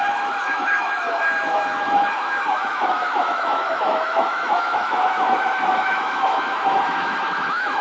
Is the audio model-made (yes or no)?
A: yes